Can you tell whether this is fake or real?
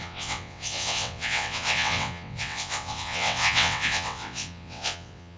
fake